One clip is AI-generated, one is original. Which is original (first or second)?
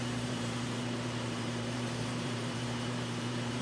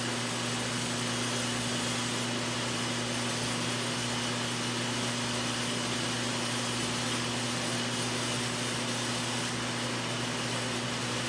second